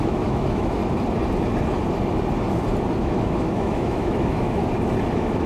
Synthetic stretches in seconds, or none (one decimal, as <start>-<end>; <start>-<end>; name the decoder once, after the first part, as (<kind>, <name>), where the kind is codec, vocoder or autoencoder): 0.0-0.8 (autoencoder, DAC-VAE); 3.0-4.6; 5.1-5.5